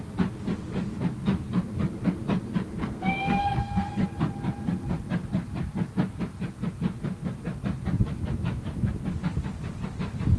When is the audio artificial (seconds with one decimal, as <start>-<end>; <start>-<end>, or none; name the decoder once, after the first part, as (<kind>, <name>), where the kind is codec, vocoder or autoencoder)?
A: 2.8-3.9 (codec, SNAC)